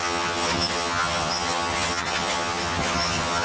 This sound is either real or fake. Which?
fake